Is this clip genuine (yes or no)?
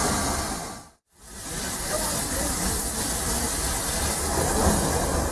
yes